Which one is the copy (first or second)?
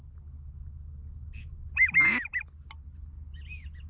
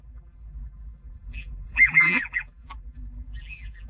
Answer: second